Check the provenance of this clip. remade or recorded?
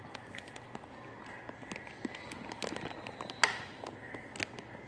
recorded